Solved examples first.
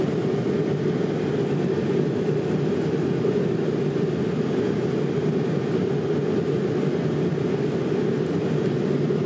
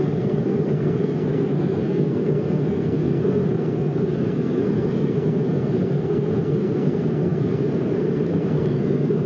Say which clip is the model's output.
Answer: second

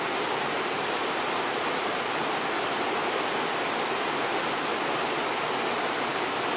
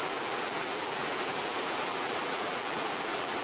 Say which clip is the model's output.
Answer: second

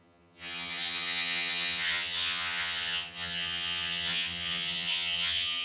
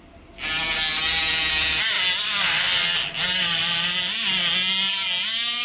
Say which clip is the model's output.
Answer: first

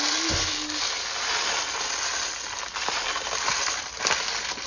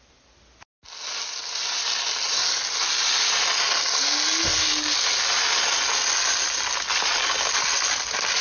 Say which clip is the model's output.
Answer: first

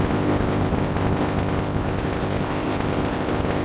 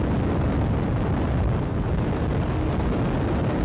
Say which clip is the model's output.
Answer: first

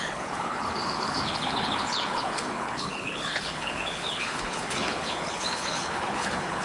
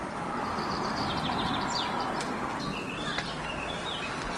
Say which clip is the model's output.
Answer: first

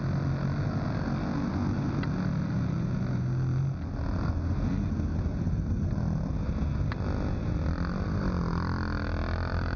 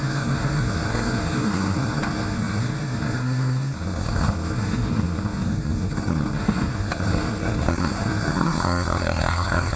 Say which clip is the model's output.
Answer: second